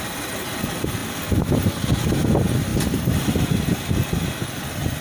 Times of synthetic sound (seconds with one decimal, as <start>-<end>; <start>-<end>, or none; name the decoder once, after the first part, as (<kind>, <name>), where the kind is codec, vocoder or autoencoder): none